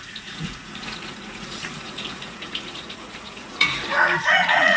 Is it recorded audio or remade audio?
remade